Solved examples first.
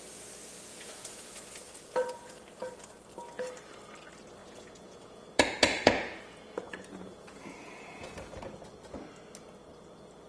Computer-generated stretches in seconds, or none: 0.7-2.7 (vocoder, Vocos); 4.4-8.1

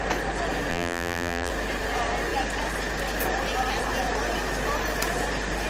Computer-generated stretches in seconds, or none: 0.7-1.5 (vocoder, BigVGAN v2)

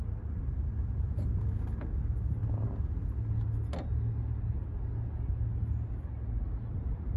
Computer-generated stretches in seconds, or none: none

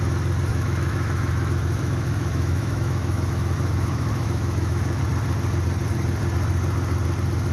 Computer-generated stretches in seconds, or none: 0.5-5.0 (autoencoder, DAC-VAE)

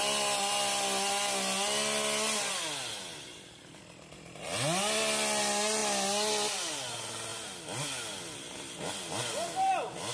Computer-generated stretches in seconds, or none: none

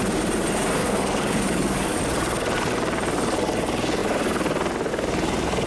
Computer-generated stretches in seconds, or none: 0.8-2.0 (codec, DAC)